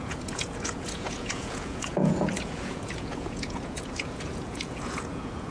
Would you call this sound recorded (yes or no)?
no